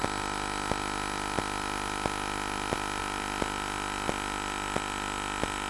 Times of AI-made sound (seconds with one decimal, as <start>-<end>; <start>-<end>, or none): none